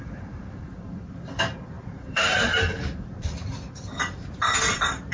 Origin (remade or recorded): remade